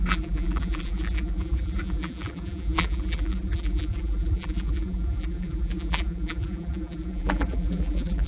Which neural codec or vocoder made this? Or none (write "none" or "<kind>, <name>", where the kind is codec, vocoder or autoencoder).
vocoder, BigVGAN v2